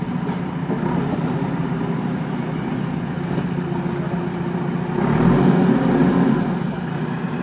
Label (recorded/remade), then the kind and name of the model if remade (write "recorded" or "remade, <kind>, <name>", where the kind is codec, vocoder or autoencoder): recorded